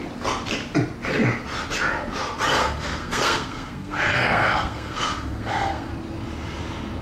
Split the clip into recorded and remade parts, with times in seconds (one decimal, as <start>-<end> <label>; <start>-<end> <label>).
0.0-2.6 recorded; 2.6-5.9 remade; 5.9-7.0 recorded